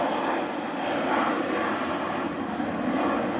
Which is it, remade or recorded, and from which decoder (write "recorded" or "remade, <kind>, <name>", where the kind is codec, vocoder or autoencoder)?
recorded